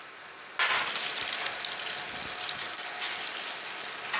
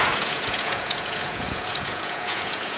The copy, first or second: second